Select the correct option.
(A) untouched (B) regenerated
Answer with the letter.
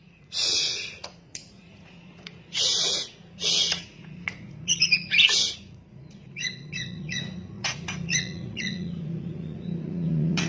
B